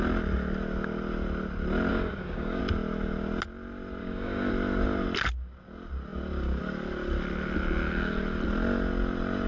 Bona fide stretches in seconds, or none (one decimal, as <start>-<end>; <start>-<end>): 0.0-1.9; 2.6-4.0; 4.5-9.5